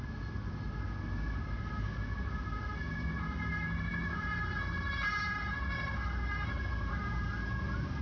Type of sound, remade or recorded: recorded